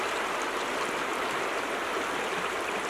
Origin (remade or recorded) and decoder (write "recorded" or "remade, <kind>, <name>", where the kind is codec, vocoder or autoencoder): recorded